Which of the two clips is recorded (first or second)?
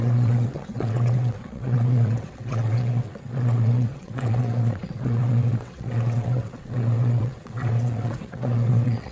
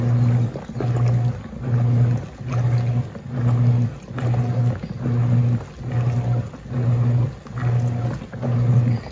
second